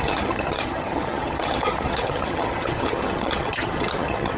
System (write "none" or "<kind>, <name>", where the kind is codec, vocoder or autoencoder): vocoder, HiFi-GAN